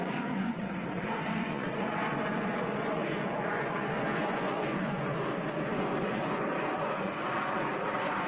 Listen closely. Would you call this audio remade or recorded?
remade